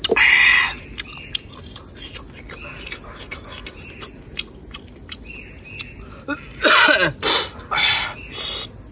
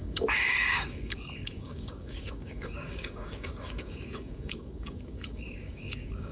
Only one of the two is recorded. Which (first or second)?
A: first